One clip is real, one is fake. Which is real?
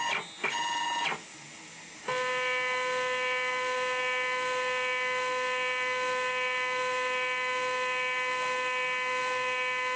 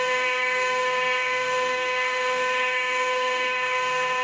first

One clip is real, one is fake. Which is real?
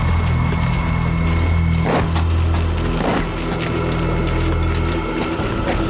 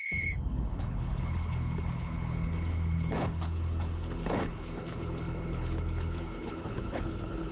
first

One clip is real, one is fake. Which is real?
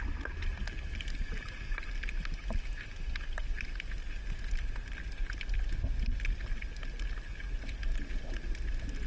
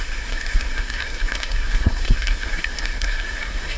first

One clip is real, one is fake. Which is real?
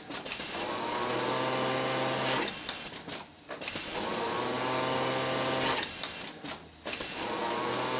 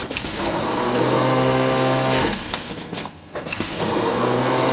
first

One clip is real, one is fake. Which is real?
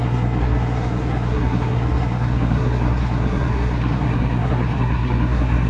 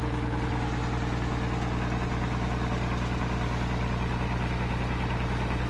second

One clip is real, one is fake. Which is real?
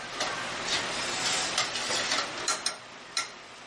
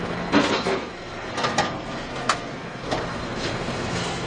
first